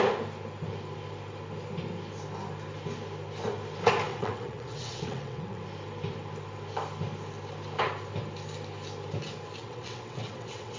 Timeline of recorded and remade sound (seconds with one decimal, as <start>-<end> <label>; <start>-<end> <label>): 0.0-4.1 recorded; 4.1-5.6 remade; 5.6-9.6 recorded; 9.6-10.8 remade